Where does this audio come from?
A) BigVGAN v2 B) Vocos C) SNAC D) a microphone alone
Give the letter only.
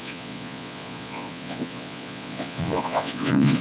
B